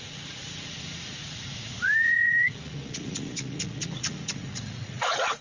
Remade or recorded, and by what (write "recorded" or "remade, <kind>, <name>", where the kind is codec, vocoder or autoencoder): remade, vocoder, Vocos